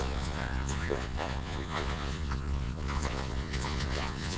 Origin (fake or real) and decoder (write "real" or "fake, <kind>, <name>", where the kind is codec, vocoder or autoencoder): fake, vocoder, Vocos